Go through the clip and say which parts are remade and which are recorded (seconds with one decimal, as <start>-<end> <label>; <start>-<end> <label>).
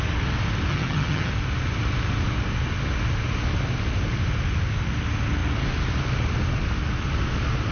0.0-0.7 recorded; 0.7-1.3 remade; 1.3-7.7 recorded